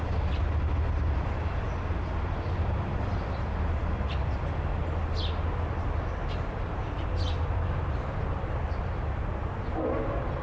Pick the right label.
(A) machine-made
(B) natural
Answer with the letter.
B